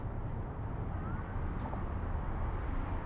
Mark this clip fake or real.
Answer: real